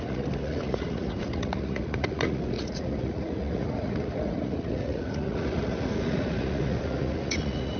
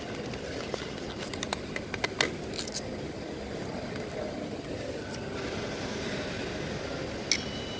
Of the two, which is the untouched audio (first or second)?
second